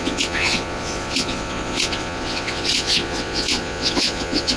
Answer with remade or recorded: remade